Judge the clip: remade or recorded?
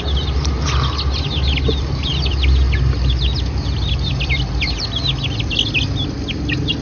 recorded